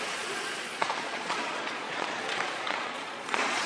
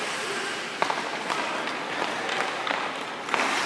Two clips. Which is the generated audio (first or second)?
first